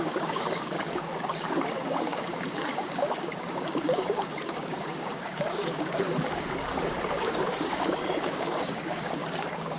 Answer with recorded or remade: remade